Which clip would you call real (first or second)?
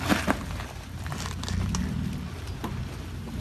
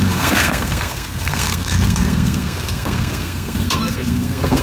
first